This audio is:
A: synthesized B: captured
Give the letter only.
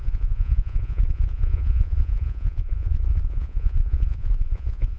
A